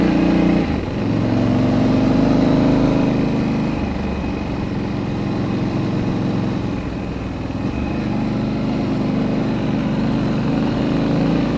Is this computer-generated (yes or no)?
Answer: no